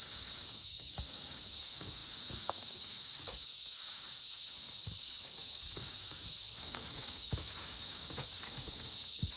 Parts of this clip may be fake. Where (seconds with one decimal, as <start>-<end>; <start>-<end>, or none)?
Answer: 0.0-9.4